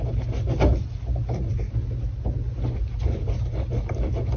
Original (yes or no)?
yes